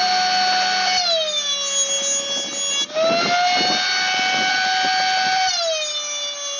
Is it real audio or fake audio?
real